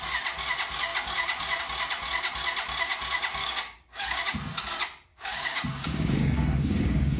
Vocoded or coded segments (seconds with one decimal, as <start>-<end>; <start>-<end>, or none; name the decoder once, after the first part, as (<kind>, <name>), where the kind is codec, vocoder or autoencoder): 3.4-4.2 (codec, DAC); 5.1-7.2